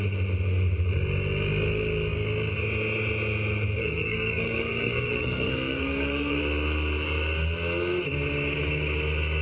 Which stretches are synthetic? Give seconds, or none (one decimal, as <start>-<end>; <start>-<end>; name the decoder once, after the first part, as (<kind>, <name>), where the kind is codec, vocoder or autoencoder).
3.8-6.4 (codec, SNAC)